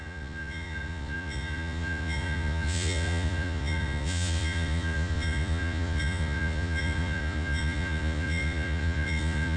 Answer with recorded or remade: remade